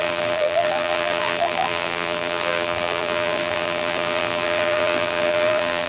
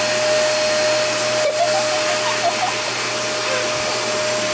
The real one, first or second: second